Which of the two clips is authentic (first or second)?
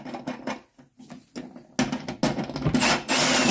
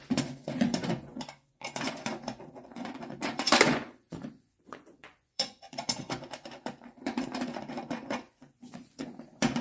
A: first